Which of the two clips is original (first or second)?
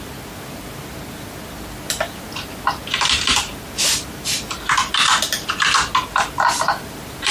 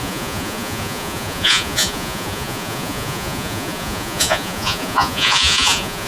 first